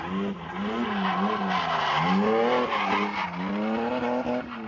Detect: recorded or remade recorded